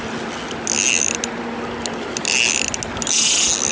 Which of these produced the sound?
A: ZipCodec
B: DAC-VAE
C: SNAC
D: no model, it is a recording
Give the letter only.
D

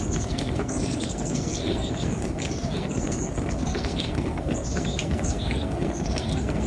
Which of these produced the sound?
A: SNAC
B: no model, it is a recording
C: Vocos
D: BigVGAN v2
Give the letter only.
A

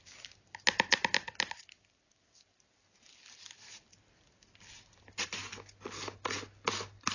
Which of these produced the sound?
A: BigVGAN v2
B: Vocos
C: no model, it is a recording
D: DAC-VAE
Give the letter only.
C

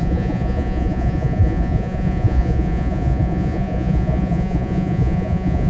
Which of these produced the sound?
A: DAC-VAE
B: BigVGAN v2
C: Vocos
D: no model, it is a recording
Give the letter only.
C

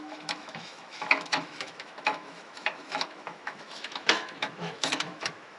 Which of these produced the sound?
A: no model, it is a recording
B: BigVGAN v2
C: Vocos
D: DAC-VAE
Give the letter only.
D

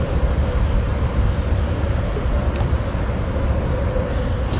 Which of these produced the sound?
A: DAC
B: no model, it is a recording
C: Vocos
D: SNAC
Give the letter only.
B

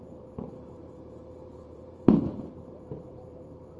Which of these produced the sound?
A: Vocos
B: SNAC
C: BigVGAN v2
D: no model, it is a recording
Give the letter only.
C